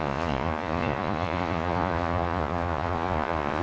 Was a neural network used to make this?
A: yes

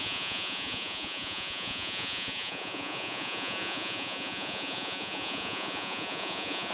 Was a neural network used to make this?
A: yes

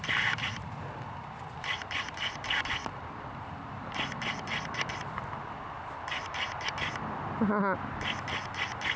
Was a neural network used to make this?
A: no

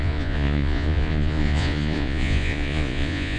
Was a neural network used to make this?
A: yes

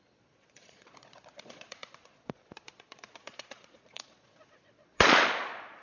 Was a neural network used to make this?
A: yes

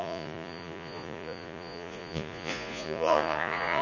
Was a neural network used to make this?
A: yes